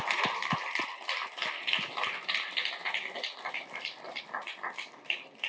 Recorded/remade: remade